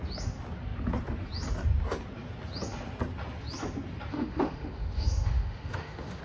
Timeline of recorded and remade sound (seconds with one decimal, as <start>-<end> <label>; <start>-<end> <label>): 0.0-4.1 recorded; 4.1-6.2 remade